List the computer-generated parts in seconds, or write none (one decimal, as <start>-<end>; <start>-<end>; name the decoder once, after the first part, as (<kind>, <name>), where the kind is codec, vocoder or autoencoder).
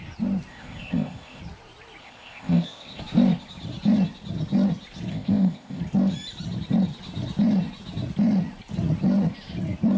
0.5-1.4 (codec, ZipCodec); 2.0-3.0; 5.1-5.8